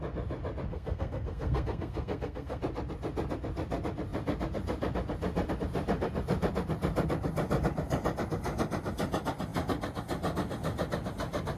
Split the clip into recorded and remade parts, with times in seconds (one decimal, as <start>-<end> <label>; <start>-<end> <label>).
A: 0.0-0.7 recorded; 0.7-2.6 remade; 2.6-11.6 recorded